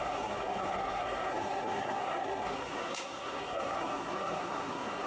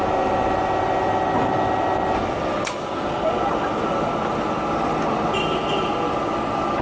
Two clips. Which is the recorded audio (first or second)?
second